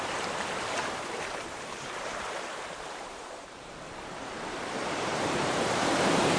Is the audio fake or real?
fake